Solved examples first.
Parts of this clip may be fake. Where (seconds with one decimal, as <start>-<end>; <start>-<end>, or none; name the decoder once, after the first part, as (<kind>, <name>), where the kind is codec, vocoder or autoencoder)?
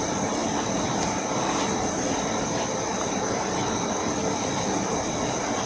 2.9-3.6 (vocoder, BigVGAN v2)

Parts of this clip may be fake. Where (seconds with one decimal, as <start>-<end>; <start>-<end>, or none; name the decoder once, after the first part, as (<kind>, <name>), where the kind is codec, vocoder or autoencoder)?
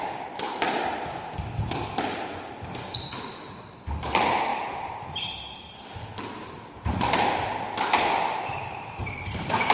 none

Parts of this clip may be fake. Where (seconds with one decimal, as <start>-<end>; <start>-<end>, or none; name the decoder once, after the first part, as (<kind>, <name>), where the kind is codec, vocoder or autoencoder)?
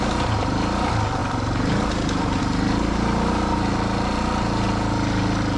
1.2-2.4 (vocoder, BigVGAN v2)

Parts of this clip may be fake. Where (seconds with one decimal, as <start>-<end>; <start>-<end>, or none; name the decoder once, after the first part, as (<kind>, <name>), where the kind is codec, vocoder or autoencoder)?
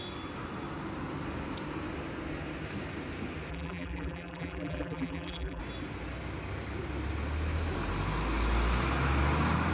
3.5-5.6 (vocoder, BigVGAN v2)